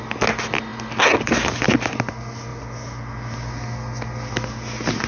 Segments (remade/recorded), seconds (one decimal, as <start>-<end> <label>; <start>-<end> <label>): 0.0-5.1 recorded

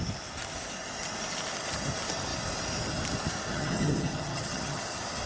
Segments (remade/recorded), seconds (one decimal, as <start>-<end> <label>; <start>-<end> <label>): 0.0-3.5 recorded; 3.5-4.8 remade; 4.8-5.3 recorded

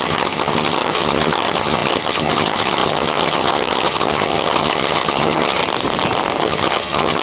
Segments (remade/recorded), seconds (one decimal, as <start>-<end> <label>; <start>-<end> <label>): 0.0-5.6 remade; 5.6-6.4 recorded; 6.4-7.2 remade